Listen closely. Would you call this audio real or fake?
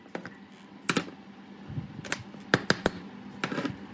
real